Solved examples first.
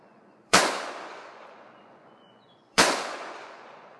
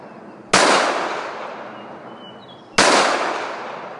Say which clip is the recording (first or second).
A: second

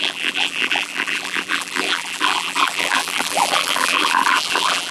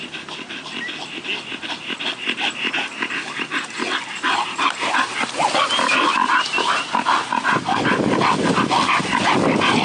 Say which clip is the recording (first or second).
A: second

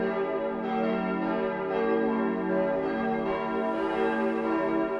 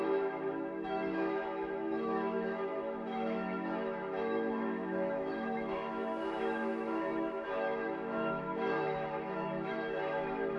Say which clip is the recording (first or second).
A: first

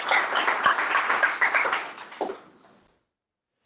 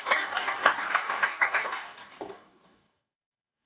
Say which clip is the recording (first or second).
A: first